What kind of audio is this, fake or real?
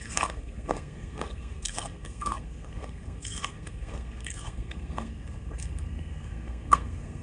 fake